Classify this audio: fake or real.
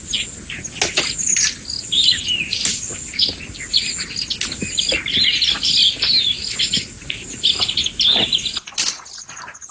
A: real